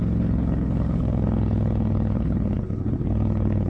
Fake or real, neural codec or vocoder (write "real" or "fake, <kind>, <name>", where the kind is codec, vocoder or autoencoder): fake, codec, HILCodec